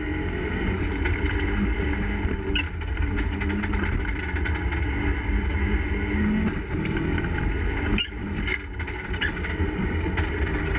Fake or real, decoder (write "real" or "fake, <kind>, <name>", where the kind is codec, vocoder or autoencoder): real